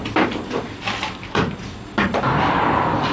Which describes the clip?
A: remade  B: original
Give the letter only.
B